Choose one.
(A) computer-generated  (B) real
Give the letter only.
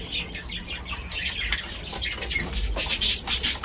B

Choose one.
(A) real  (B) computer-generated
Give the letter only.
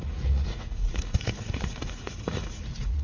B